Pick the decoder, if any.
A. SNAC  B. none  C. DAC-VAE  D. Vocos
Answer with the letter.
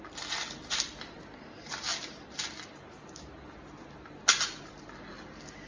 B